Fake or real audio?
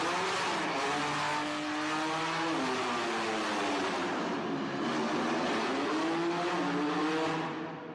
real